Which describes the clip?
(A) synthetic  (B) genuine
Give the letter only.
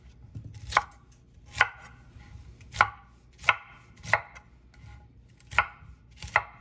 B